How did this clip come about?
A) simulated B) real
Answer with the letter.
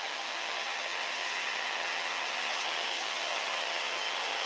A